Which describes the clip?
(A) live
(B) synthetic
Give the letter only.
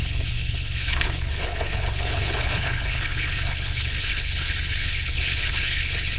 B